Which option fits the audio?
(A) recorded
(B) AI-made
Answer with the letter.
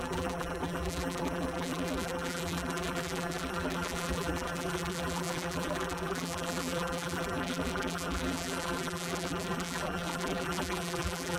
B